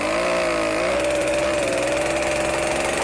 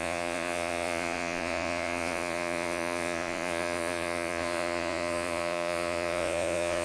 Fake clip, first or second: second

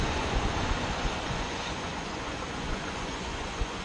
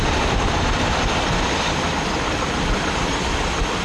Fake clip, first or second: first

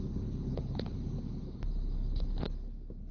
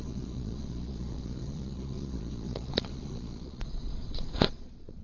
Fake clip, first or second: second